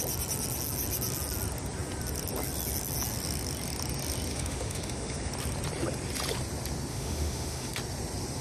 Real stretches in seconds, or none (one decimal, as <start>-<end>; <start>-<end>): 0.0-4.3; 5.3-6.9; 7.7-8.4